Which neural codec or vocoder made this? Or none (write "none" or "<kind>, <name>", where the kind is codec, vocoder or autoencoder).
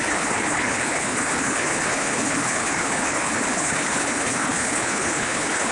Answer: codec, HILCodec